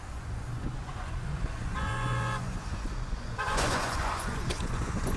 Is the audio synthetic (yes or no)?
yes